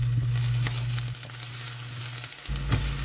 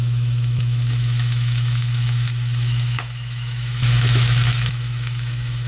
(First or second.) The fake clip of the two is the second